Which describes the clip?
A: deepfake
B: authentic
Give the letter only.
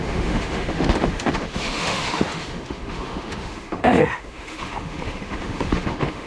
A